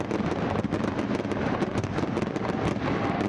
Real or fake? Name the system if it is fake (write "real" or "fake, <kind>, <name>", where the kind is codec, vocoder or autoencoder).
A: real